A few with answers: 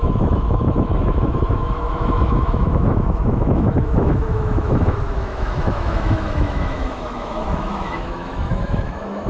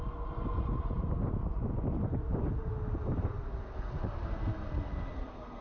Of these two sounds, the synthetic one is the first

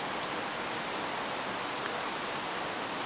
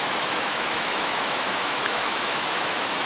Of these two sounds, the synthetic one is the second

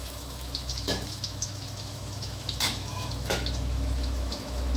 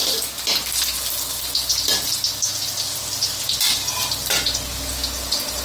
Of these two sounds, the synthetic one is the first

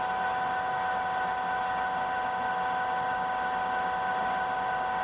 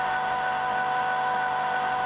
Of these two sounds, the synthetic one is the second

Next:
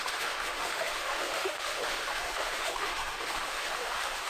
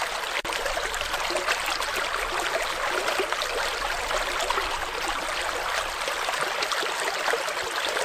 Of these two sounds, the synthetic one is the first